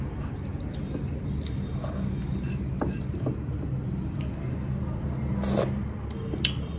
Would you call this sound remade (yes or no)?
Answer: no